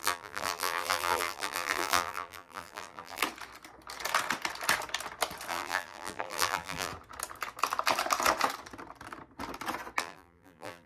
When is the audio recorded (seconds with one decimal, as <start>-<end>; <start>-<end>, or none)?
3.2-5.5; 6.9-10.0